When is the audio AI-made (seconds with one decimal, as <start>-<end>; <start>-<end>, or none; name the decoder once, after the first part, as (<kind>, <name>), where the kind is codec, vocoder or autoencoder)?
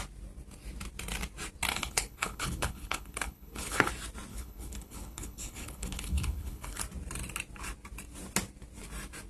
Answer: 1.7-3.9 (codec, HILCodec); 4.3-6.8